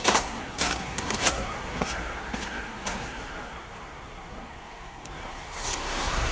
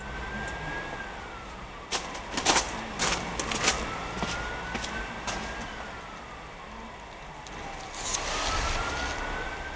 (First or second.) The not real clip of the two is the first